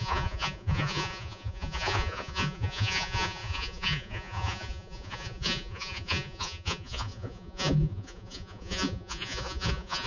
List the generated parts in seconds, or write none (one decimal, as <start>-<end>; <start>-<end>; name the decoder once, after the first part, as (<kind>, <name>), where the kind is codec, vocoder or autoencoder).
0.0-10.1 (vocoder, Vocos)